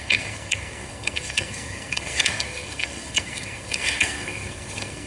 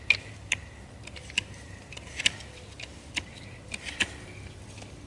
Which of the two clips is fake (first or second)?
first